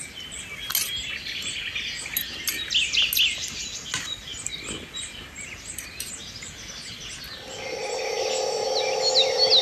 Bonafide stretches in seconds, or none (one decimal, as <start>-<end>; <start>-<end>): 0.0-4.3; 7.3-9.6